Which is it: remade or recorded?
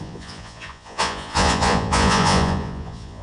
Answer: remade